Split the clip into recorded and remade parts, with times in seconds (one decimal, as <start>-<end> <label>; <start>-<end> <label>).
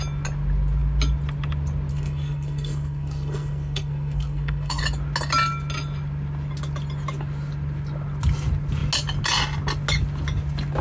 0.0-1.9 recorded; 1.9-4.8 remade; 4.8-10.8 recorded